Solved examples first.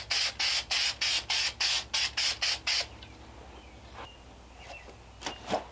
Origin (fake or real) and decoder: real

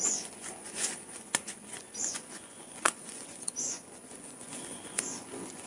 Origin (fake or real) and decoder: fake, vocoder, Vocos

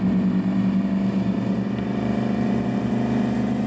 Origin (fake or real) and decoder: real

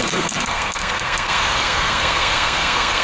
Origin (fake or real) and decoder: fake, codec, SNAC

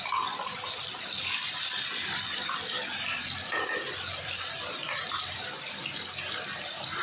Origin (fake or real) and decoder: fake, vocoder, BigVGAN v2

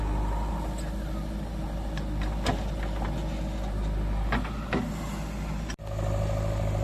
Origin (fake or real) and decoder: real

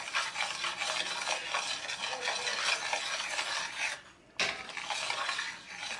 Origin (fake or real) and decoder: real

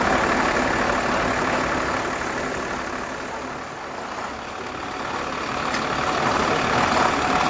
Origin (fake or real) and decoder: real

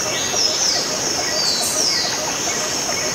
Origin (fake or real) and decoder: real